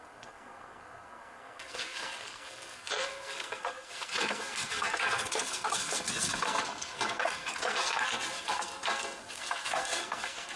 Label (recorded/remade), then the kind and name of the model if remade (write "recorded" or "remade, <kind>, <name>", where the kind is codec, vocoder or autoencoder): remade, codec, SNAC